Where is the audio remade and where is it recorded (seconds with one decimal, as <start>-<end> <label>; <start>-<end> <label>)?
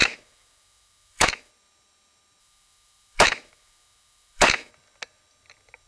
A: 0.0-1.5 remade; 1.5-2.4 recorded; 2.4-4.7 remade; 4.7-5.9 recorded